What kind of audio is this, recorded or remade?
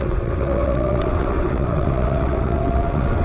remade